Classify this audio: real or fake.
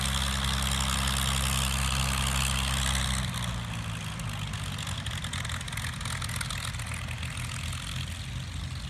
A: real